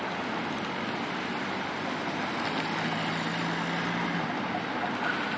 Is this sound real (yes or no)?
yes